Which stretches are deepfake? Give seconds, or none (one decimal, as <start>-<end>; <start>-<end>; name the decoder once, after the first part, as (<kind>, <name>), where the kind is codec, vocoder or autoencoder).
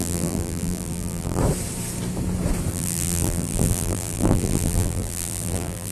0.0-1.4 (vocoder, BigVGAN v2); 2.7-5.9